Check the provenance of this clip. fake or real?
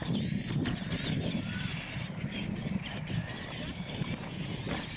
real